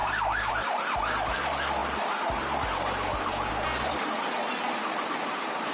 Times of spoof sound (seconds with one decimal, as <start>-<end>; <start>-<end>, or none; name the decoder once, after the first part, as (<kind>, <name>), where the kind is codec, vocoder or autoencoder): 0.0-0.5 (codec, DAC)